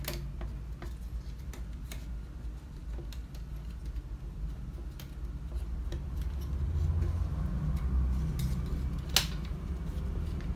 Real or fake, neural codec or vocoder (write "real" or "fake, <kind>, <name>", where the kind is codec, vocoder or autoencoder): real